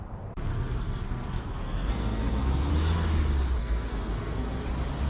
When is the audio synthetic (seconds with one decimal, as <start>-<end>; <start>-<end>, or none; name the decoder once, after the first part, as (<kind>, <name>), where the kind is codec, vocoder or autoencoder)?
0.5-2.7 (codec, SNAC); 3.6-4.6

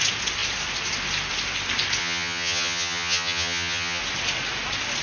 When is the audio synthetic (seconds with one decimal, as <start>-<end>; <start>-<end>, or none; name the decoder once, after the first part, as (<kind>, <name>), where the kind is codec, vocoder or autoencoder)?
2.0-4.0 (vocoder, HiFi-GAN)